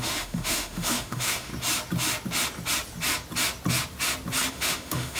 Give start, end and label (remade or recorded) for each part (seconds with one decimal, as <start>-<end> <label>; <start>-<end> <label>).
0.0-1.5 remade; 1.5-4.5 recorded; 4.5-5.2 remade